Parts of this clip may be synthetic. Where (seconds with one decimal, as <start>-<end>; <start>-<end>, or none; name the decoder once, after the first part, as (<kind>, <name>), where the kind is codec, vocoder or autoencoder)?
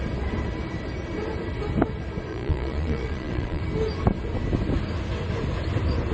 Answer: 2.3-3.6 (vocoder, Vocos)